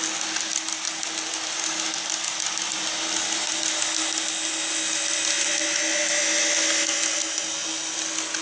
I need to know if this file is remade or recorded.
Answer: recorded